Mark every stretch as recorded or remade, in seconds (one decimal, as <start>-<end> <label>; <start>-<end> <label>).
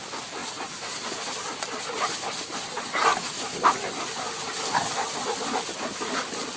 0.0-6.6 recorded